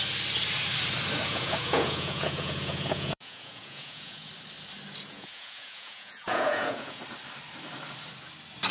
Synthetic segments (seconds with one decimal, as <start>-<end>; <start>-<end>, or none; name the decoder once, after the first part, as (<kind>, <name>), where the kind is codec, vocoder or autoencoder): 1.2-4.3 (vocoder, Vocos); 5.1-7.0